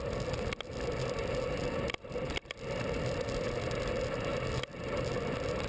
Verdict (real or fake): real